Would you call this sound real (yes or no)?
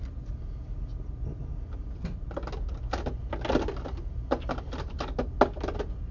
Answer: yes